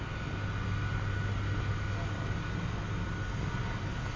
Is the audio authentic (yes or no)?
yes